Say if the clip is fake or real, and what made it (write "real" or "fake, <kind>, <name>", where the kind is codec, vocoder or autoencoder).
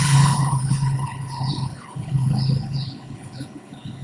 fake, codec, HILCodec